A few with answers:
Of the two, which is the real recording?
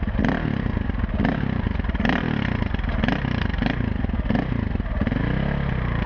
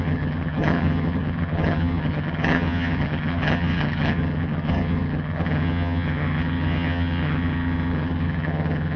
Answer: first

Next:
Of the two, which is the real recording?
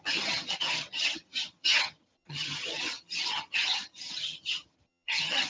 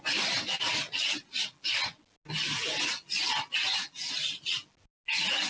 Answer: second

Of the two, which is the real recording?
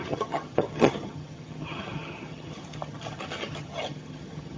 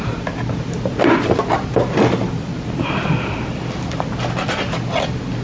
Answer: second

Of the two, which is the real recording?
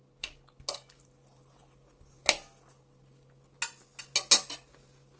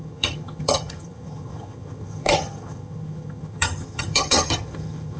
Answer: first